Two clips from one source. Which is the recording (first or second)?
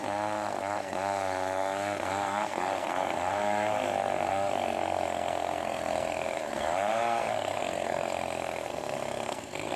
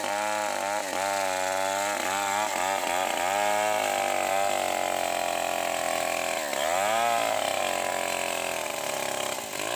second